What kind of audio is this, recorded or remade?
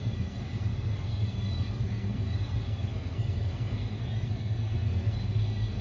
remade